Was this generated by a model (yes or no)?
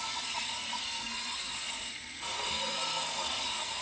yes